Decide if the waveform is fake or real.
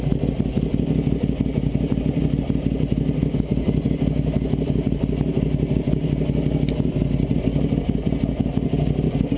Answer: real